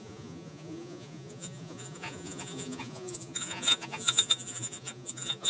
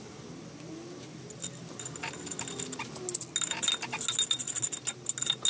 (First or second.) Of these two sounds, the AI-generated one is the first